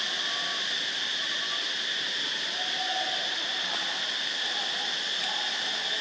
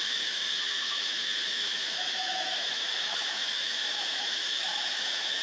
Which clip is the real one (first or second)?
first